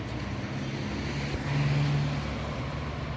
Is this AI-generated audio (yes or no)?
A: no